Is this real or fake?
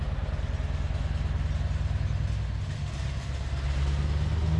real